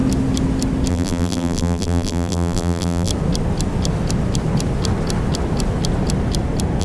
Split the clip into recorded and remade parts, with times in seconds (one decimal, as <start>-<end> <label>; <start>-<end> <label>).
0.0-0.9 recorded; 0.9-3.1 remade; 3.1-6.8 recorded